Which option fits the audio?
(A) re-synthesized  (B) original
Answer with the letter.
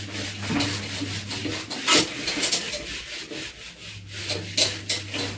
B